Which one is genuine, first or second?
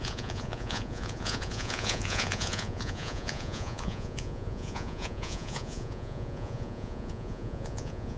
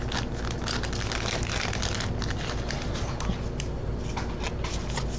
second